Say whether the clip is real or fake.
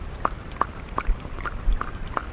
fake